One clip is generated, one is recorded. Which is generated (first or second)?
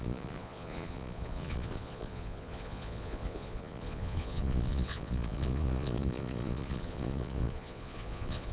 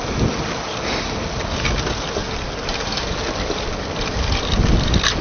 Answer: first